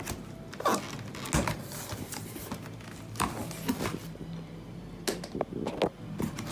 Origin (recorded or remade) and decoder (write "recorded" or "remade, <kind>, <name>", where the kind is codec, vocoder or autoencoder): recorded